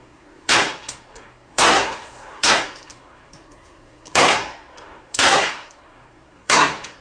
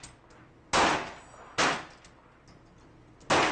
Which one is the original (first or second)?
second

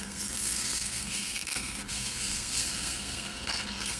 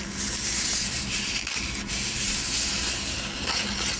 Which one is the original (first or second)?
second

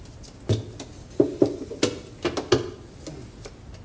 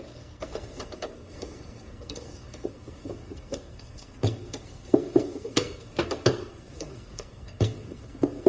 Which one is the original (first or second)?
first